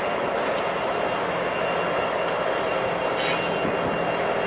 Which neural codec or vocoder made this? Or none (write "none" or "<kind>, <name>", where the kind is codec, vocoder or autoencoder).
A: none